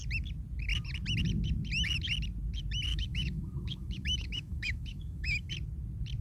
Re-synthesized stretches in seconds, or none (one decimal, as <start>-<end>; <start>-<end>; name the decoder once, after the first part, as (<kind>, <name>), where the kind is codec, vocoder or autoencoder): 2.9-5.5 (autoencoder, DAC-VAE)